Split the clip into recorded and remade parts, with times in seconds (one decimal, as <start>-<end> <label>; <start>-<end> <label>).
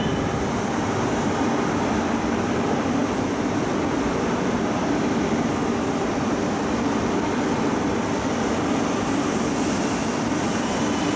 0.0-11.2 recorded